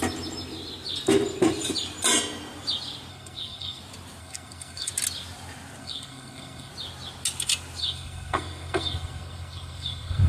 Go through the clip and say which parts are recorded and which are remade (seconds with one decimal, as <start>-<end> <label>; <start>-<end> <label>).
0.0-3.1 recorded; 3.1-3.8 remade; 3.8-4.2 recorded; 4.2-4.9 remade; 4.9-5.8 recorded; 5.8-6.7 remade; 6.7-7.8 recorded; 7.8-10.3 remade